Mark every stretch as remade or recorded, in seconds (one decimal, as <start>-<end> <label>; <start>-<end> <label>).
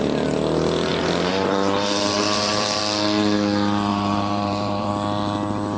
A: 0.0-0.9 recorded; 0.9-2.8 remade; 2.8-3.9 recorded; 3.9-4.9 remade; 4.9-5.8 recorded